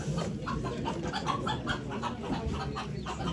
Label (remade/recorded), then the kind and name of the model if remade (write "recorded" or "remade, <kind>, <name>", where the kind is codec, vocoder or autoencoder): recorded